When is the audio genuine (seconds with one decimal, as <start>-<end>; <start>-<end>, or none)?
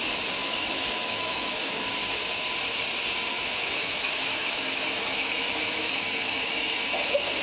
0.0-0.4; 1.8-3.3; 6.4-7.4